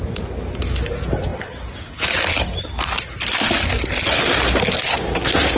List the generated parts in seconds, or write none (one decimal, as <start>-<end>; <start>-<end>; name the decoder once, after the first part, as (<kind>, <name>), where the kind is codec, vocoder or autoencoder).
4.9-5.6 (codec, SNAC)